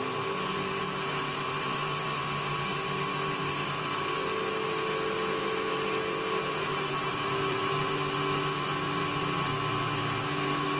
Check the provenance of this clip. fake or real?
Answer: real